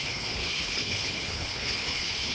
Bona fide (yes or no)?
no